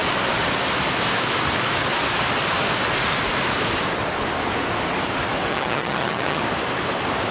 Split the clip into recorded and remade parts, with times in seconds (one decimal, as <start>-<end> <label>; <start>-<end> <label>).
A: 0.0-5.5 recorded; 5.5-6.4 remade; 6.4-7.3 recorded